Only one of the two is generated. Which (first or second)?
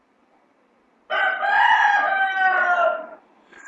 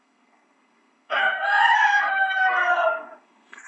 second